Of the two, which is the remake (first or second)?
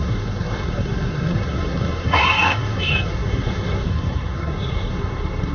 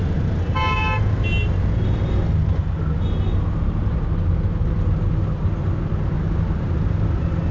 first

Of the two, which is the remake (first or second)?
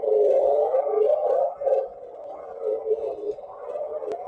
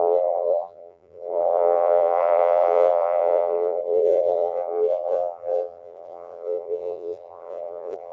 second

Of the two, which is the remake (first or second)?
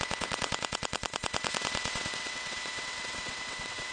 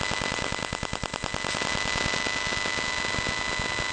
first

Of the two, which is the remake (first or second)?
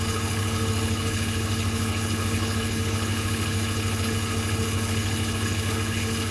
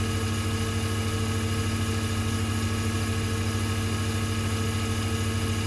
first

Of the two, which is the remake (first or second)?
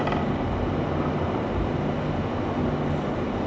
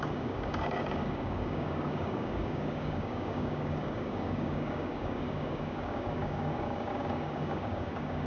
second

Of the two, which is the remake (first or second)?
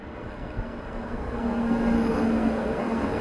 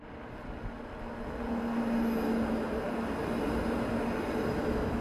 first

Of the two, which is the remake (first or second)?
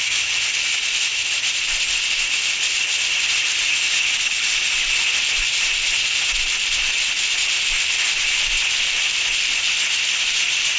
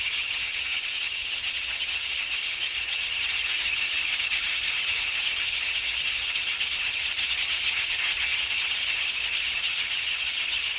second